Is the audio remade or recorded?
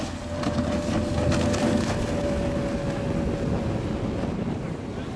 recorded